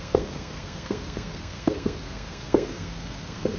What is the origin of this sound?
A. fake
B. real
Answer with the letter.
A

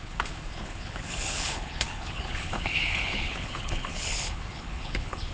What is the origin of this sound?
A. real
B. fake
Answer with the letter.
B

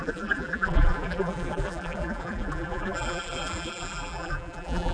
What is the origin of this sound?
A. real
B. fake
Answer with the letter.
B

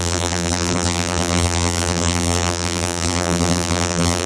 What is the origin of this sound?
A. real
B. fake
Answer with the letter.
B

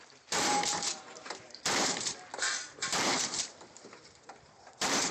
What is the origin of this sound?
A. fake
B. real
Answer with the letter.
A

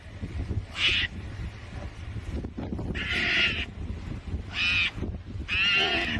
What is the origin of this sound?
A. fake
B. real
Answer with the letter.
B